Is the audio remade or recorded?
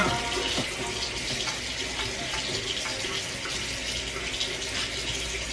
recorded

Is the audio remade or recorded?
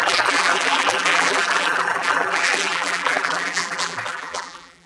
remade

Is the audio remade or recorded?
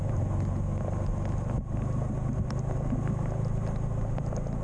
recorded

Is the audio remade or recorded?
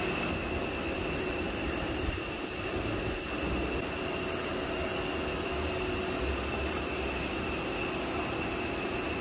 recorded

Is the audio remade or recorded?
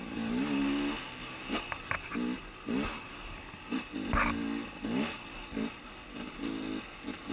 recorded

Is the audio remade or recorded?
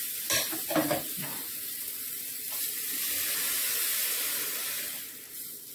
remade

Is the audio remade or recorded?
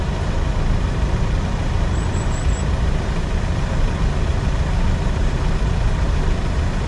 recorded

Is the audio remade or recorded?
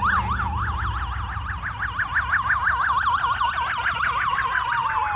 recorded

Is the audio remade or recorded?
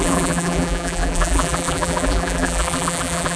remade